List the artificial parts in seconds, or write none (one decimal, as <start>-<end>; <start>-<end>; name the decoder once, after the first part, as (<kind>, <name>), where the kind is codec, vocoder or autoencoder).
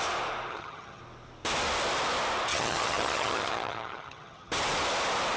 0.5-1.0 (vocoder, HiFi-GAN); 2.5-4.5